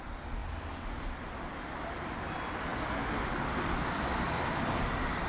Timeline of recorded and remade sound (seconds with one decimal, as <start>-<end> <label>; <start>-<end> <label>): 0.0-5.3 recorded